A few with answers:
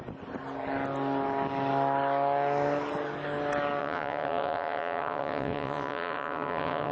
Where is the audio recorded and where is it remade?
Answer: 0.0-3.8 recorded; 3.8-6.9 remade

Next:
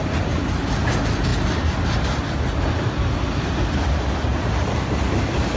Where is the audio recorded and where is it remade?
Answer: 0.0-5.6 recorded

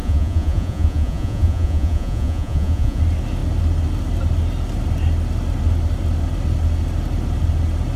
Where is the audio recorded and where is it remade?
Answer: 0.0-3.0 remade; 3.0-8.0 recorded

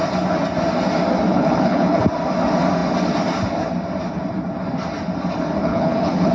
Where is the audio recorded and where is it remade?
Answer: 0.0-1.3 recorded; 1.3-2.0 remade; 2.0-5.6 recorded; 5.6-6.3 remade

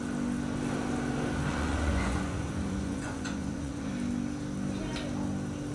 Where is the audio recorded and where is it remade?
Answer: 0.0-1.5 recorded; 1.5-3.9 remade; 3.9-5.7 recorded

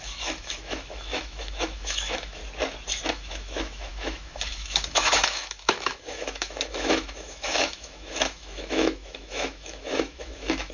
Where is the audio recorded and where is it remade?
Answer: 0.0-2.4 remade; 2.4-3.1 recorded; 3.1-10.7 remade